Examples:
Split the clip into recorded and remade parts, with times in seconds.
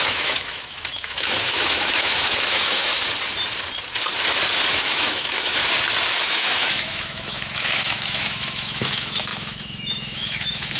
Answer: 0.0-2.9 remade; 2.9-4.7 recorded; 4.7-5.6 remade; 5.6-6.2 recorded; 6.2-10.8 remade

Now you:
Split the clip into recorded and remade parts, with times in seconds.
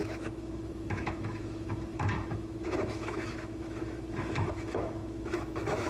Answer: 0.0-5.9 remade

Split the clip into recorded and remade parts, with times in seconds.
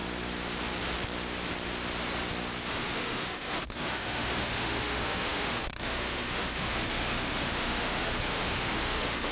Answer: 0.0-2.7 recorded; 2.7-9.3 remade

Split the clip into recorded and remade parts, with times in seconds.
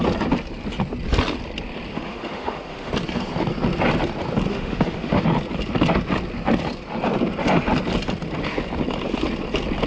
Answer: 0.0-1.9 recorded; 1.9-2.9 remade; 2.9-4.5 recorded; 4.5-5.2 remade; 5.2-9.9 recorded